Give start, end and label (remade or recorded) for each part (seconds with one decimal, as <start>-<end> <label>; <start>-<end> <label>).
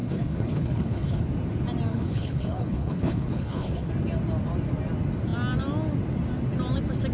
0.0-1.3 remade; 1.3-1.9 recorded; 1.9-3.9 remade; 3.9-7.1 recorded